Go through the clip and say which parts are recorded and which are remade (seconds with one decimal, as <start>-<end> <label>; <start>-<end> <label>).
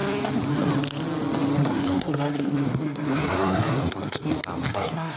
0.0-1.6 recorded; 1.6-4.3 remade; 4.3-4.7 recorded; 4.7-5.2 remade